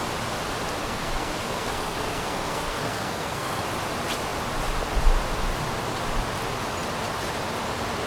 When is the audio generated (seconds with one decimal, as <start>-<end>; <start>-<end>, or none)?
0.8-3.6